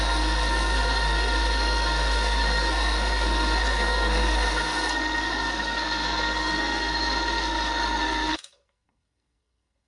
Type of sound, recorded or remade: remade